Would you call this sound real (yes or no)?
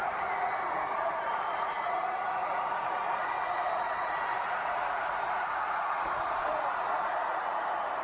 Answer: no